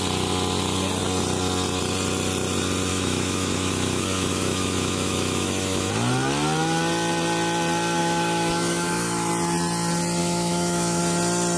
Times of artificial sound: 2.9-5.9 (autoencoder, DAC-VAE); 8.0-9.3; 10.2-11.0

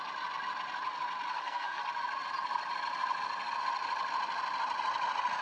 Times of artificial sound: 1.3-1.8 (codec, SNAC)

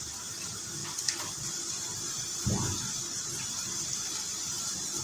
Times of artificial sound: none

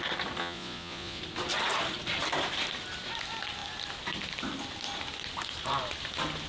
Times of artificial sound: 0.4-1.2 (vocoder, Vocos)

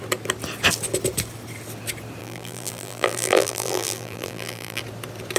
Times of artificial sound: 2.2-4.8 (vocoder, BigVGAN v2)

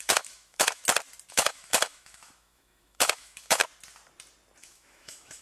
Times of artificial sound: 0.0-0.8 (autoencoder, DAC-VAE); 1.3-3.6; 4.6-5.4

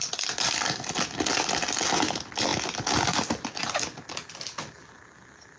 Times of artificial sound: none

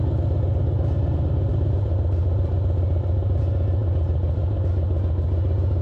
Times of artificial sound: 1.5-3.4 (vocoder, BigVGAN v2); 3.8-4.7